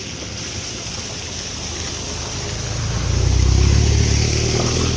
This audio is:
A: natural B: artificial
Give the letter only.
A